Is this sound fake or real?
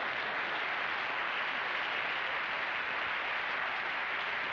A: real